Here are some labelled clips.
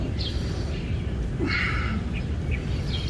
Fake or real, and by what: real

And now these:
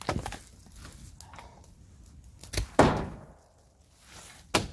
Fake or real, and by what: real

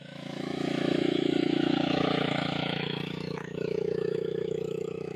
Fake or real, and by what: fake, autoencoder, DAC-VAE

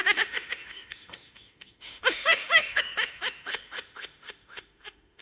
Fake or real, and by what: fake, autoencoder, DAC-VAE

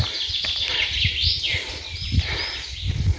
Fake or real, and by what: real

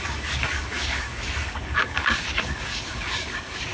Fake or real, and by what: fake, codec, DAC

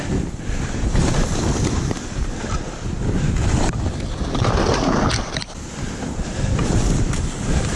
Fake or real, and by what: fake, vocoder, BigVGAN v2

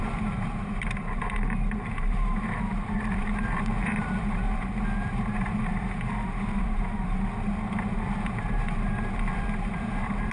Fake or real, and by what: fake, vocoder, BigVGAN v2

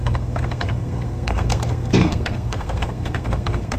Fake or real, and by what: fake, codec, SNAC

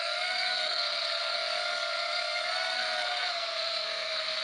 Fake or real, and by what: fake, codec, SNAC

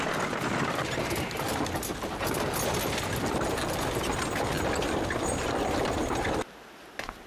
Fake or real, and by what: real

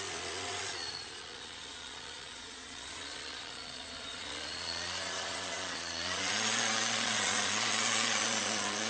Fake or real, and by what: fake, vocoder, Vocos